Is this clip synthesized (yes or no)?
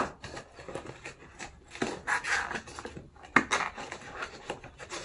no